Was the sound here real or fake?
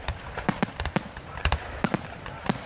fake